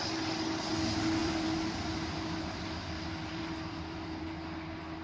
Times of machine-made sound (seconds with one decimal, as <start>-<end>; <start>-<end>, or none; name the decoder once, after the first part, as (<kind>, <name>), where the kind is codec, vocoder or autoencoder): 1.2-4.2 (vocoder, BigVGAN v2)